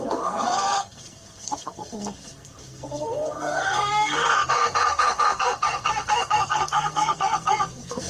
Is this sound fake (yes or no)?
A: yes